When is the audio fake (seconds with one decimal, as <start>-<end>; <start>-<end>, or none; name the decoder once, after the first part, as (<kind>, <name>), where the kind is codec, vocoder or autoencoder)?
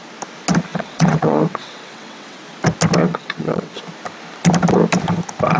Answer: 0.7-2.4 (vocoder, WaveNeXt); 3.0-3.8